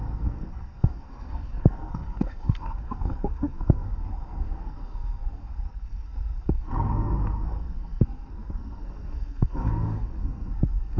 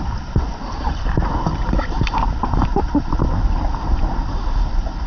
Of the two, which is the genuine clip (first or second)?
second